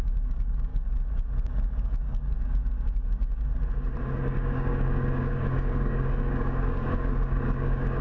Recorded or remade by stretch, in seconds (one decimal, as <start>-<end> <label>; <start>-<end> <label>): 0.0-0.7 remade; 0.7-1.8 recorded; 1.8-3.5 remade; 3.5-4.2 recorded; 4.2-8.0 remade